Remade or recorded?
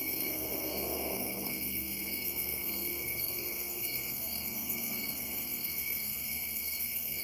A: remade